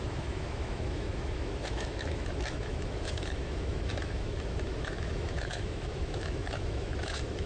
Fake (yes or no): yes